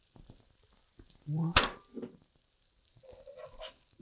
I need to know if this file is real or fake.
real